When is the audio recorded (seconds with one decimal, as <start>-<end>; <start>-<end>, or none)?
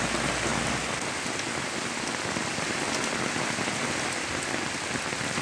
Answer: 0.0-5.4